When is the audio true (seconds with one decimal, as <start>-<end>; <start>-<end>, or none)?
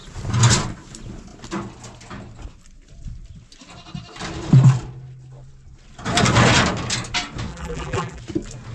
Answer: 0.0-7.5; 8.2-8.7